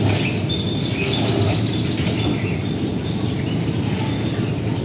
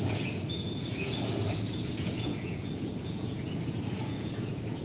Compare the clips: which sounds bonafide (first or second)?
first